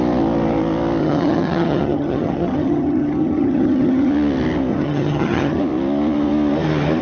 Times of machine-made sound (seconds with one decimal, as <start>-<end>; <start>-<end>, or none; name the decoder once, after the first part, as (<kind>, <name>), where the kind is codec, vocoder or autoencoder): 1.0-4.1 (vocoder, HiFi-GAN); 4.7-5.6